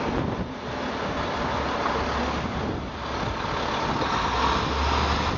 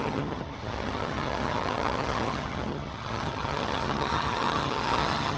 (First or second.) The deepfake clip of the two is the second